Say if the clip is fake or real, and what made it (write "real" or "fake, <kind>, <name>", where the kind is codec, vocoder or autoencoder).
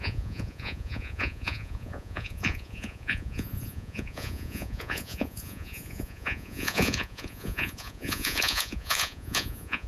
fake, vocoder, Vocos